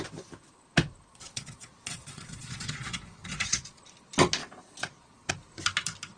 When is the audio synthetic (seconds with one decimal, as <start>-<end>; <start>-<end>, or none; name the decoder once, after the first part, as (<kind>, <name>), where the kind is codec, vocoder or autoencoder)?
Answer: 1.1-3.8 (vocoder, Vocos); 4.4-5.3